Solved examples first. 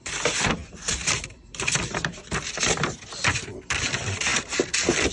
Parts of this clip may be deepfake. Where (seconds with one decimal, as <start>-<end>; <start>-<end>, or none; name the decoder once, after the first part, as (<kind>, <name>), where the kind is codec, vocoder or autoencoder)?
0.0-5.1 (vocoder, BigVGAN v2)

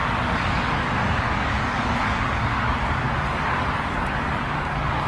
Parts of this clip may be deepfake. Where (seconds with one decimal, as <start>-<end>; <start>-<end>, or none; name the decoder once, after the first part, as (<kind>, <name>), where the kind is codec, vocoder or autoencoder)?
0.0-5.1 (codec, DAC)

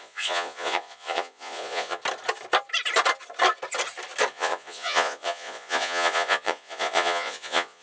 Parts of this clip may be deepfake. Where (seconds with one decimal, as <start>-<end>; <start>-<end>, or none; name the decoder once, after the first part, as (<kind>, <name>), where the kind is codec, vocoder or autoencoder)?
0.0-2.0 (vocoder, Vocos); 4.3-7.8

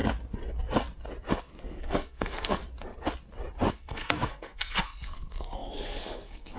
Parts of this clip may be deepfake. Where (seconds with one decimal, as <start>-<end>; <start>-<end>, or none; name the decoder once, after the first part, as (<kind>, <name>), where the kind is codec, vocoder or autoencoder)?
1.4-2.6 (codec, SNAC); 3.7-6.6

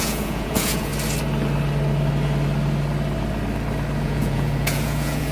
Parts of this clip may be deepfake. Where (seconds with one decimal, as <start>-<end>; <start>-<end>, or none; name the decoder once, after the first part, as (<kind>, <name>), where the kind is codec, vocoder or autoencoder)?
0.0-0.9 (vocoder, Vocos); 4.0-5.3

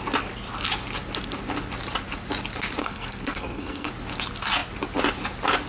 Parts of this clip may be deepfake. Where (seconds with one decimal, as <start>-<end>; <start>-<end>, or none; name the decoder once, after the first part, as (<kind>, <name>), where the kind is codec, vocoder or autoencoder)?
2.8-3.9 (codec, SNAC)

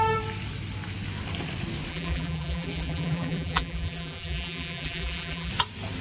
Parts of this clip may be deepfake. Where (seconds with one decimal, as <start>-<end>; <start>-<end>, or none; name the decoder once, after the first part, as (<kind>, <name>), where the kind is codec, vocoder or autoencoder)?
1.9-5.5 (vocoder, BigVGAN v2)

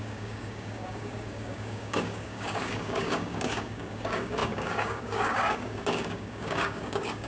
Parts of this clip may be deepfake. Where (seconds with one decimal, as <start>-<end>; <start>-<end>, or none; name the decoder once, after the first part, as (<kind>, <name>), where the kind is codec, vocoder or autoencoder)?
0.0-7.3 (codec, DAC)